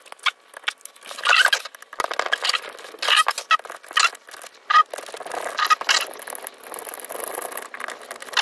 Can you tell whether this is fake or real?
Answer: real